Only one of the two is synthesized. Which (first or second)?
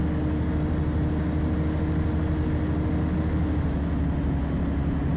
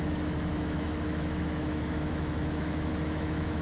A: second